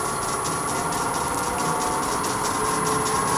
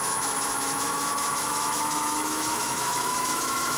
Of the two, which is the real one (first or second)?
first